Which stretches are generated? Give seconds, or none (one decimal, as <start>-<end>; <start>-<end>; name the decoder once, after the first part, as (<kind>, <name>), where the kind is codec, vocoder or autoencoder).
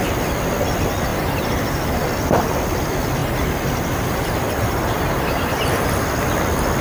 none